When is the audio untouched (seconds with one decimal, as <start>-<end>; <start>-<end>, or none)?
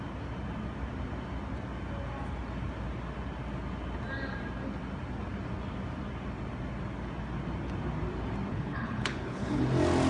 0.0-8.5; 9.6-10.1